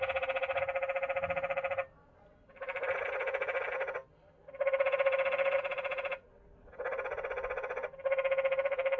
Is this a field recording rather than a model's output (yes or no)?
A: yes